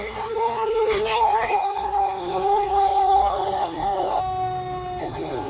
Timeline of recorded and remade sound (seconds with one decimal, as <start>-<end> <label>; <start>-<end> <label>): 0.0-4.2 remade; 4.2-5.0 recorded; 5.0-5.5 remade